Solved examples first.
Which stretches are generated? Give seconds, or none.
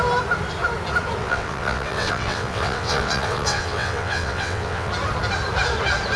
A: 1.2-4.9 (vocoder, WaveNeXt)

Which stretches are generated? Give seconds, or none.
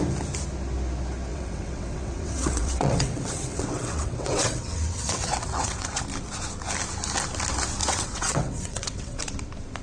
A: 1.3-6.0 (vocoder, WaveNeXt); 7.8-9.2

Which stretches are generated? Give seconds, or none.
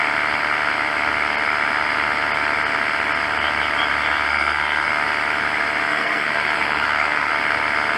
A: 4.3-4.9 (codec, SNAC); 5.9-7.3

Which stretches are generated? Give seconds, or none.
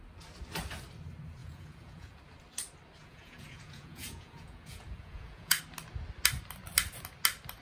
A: 1.4-2.2 (vocoder, Vocos); 3.0-5.6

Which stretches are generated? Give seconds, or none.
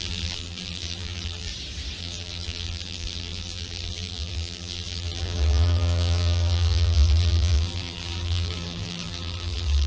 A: 0.0-1.5 (vocoder, BigVGAN v2); 2.0-9.9